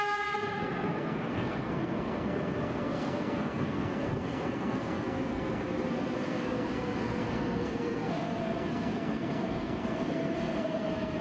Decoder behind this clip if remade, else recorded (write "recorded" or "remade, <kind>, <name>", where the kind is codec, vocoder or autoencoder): remade, codec, SNAC